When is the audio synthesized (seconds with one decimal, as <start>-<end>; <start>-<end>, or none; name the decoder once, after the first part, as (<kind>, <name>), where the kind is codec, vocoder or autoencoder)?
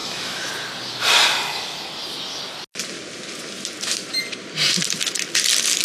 0.0-0.5 (autoencoder, DAC-VAE)